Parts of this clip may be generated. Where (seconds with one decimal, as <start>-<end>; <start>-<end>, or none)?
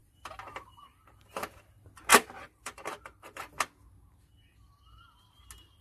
0.0-1.6; 2.1-3.6